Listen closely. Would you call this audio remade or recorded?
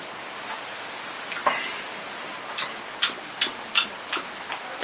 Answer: recorded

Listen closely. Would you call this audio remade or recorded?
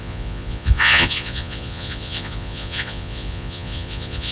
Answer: remade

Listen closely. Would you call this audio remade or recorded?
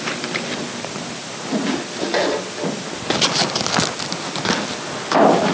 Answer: recorded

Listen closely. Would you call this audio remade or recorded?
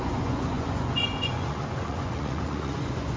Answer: remade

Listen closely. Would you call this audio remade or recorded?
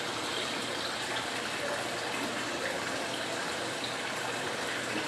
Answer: recorded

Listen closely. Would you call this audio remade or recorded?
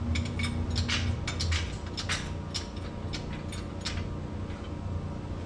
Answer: recorded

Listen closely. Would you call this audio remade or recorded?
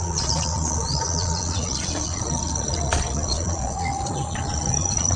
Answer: remade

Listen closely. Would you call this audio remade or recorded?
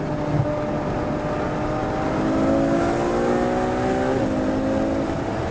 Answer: recorded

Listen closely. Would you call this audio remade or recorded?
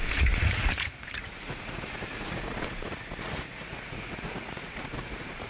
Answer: remade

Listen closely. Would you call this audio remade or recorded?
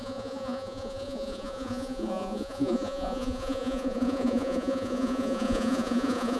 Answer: remade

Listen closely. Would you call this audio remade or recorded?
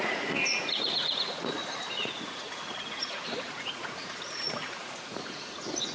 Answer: remade